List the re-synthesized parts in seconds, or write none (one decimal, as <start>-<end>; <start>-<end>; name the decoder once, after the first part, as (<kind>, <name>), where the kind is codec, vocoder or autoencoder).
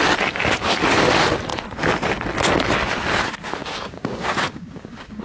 3.6-5.2 (codec, DAC)